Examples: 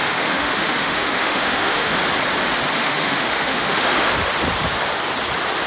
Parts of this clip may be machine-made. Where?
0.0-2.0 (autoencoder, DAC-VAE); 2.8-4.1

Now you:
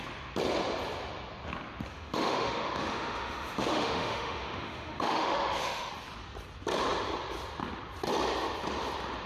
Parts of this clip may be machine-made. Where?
1.9-5.9 (autoencoder, DAC-VAE)

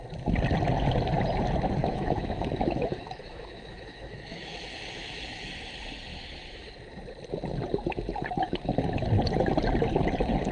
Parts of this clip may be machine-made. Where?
1.8-5.5 (autoencoder, DAC-VAE)

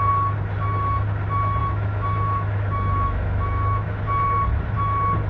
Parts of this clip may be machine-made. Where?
1.6-4.0 (autoencoder, DAC-VAE)